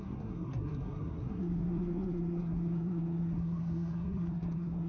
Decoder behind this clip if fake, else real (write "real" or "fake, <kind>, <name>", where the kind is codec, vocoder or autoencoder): fake, codec, SNAC